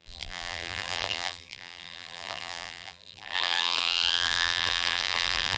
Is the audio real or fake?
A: fake